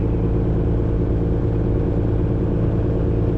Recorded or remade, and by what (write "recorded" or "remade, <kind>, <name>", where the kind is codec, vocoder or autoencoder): recorded